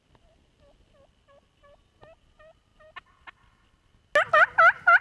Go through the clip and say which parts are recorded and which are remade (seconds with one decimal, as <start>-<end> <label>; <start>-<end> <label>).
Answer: 0.0-5.0 recorded